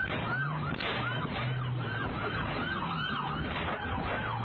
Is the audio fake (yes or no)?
no